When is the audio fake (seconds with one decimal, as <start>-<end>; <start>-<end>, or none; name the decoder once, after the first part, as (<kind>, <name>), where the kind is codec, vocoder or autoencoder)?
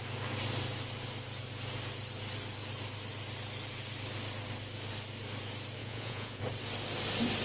5.8-6.4 (vocoder, Vocos)